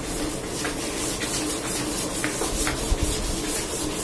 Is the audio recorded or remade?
recorded